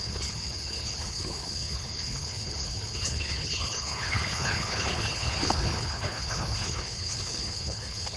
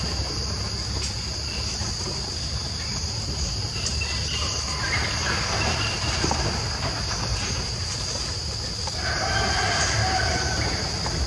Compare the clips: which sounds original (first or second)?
second